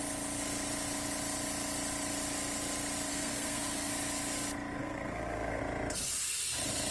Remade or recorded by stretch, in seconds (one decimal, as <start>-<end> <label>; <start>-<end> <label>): 0.0-3.1 recorded; 3.1-3.9 remade; 3.9-4.8 recorded; 4.8-5.6 remade; 5.6-6.9 recorded